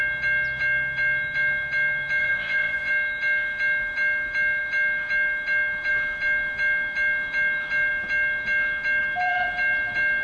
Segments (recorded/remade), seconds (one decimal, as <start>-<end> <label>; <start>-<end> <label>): 0.0-2.2 recorded; 2.2-2.9 remade; 2.9-10.2 recorded

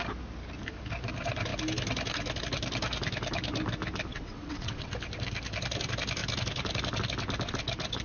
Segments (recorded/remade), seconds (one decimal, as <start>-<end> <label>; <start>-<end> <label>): 0.0-4.1 recorded; 4.1-4.9 remade; 4.9-8.0 recorded

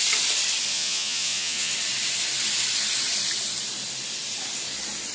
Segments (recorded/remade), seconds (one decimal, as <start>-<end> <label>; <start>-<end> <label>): 0.0-0.7 recorded; 0.7-1.7 remade; 1.7-5.1 recorded

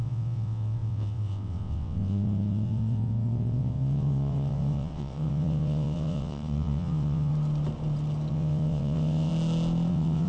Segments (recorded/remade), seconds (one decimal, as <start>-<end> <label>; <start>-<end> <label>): 0.0-7.3 remade; 7.3-8.3 recorded; 8.3-9.3 remade; 9.3-9.9 recorded; 9.9-10.3 remade

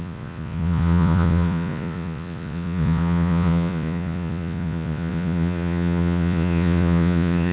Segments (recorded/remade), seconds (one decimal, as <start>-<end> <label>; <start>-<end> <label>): 0.0-7.5 remade

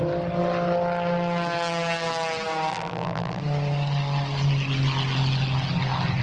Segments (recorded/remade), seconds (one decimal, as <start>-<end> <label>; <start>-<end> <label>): 0.0-2.7 recorded; 2.7-3.4 remade; 3.4-6.2 recorded